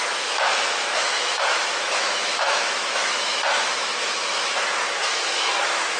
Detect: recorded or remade remade